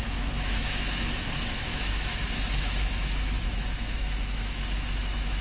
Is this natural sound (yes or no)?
no